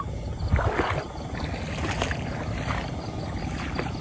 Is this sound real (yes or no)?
yes